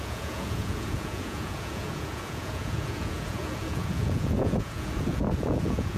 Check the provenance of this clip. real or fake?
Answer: fake